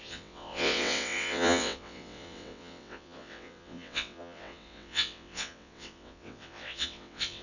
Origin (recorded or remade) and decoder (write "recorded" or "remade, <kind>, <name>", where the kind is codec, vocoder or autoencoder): remade, vocoder, WaveNeXt